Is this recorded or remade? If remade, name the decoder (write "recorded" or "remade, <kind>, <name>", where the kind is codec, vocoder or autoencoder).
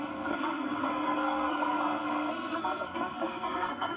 remade, codec, SNAC